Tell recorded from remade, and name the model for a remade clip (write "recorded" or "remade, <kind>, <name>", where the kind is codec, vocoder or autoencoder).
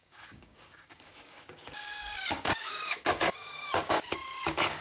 remade, codec, DAC